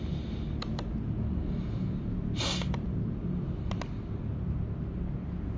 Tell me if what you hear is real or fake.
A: real